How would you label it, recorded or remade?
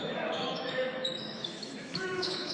remade